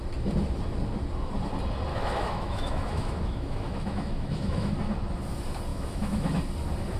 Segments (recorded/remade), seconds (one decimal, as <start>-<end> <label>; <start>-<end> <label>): 0.0-1.9 recorded; 1.9-4.7 remade; 4.7-5.7 recorded; 5.7-6.4 remade; 6.4-7.0 recorded